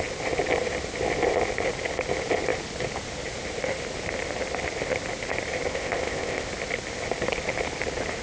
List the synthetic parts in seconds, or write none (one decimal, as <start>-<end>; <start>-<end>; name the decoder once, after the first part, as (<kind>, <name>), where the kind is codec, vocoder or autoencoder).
5.7-6.5 (codec, ZipCodec)